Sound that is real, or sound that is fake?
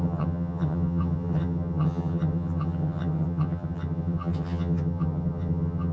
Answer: fake